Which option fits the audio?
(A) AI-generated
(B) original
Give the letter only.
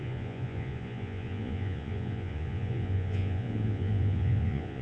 A